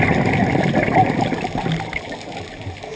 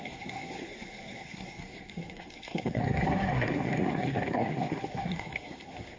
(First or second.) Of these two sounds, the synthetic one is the second